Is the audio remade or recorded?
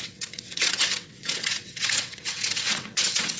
remade